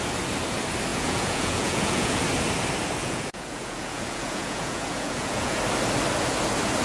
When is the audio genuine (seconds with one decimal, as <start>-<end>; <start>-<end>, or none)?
0.0-0.9; 2.2-3.0; 5.6-6.8